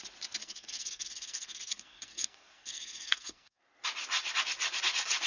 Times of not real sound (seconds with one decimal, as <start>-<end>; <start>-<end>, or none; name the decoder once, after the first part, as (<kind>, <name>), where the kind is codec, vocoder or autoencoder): 0.4-3.6 (codec, SNAC)